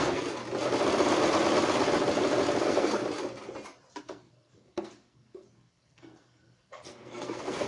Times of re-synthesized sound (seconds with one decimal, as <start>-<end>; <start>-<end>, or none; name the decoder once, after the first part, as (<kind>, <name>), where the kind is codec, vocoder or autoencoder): 0.0-0.4 (codec, SNAC); 2.6-3.0; 4.0-7.7